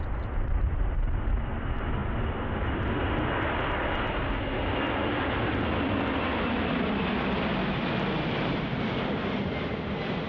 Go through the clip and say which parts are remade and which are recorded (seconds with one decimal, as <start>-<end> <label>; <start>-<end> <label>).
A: 0.0-10.3 recorded

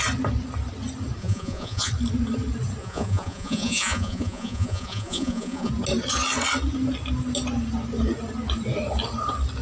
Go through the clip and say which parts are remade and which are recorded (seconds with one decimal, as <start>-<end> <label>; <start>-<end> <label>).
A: 0.0-1.2 recorded; 1.2-1.9 remade; 1.9-2.8 recorded; 2.8-5.7 remade; 5.7-9.6 recorded

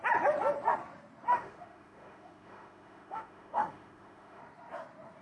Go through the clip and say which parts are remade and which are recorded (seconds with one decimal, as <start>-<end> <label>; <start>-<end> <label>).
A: 0.0-1.3 recorded; 1.3-4.4 remade; 4.4-5.2 recorded

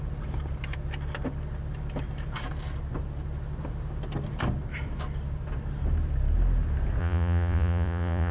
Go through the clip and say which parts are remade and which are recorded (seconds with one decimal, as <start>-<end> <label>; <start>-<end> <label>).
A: 0.0-7.0 recorded; 7.0-8.3 remade

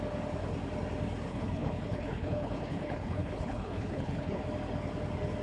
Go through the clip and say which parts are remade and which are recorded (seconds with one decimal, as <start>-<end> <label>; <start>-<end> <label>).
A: 0.0-1.3 recorded; 1.3-4.4 remade; 4.4-5.4 recorded